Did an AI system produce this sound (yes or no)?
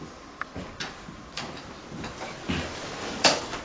no